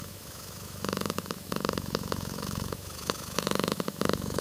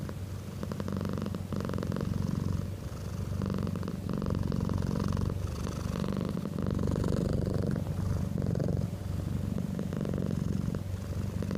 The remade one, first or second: first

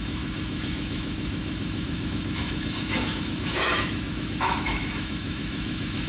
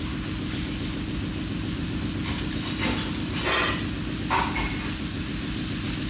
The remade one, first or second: first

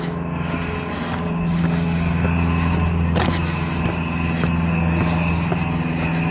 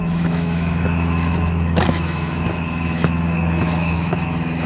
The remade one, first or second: second